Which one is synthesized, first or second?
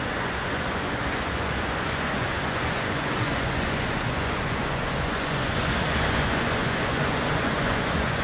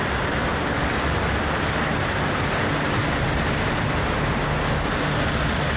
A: first